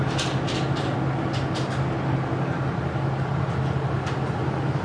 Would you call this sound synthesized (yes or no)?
no